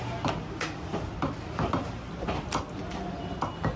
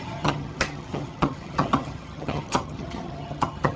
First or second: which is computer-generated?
second